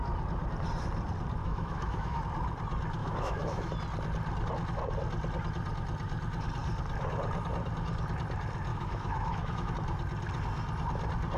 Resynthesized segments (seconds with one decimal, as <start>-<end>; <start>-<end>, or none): 1.4-2.2; 3.0-3.7; 8.7-9.7